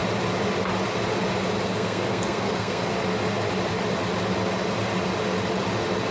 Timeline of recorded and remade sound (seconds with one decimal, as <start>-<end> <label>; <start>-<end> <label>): 0.0-1.6 recorded; 1.6-2.9 remade; 2.9-6.1 recorded